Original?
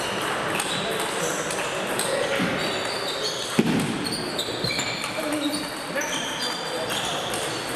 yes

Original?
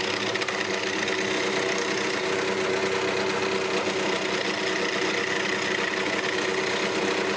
yes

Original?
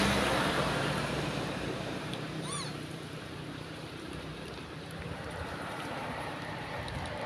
no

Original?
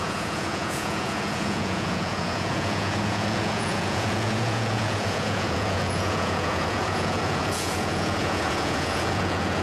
no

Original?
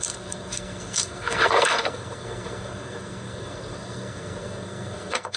no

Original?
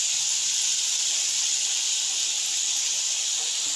yes